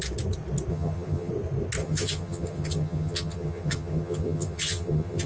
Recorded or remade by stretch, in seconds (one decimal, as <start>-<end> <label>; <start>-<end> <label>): 0.0-0.7 recorded; 0.7-1.3 remade; 1.3-1.8 recorded; 1.8-5.3 remade